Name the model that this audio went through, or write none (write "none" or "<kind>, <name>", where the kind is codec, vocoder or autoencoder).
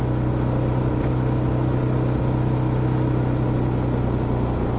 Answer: none